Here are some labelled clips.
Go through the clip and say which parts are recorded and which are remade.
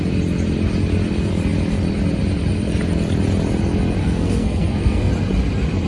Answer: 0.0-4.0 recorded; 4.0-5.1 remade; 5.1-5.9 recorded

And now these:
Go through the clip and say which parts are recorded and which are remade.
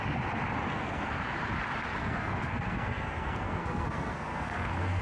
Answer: 0.0-0.7 recorded; 0.7-1.2 remade; 1.2-2.0 recorded; 2.0-5.0 remade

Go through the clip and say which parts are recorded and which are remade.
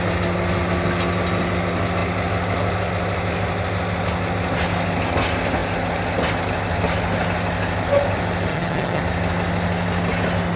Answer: 0.0-8.5 recorded; 8.5-9.0 remade; 9.0-10.6 recorded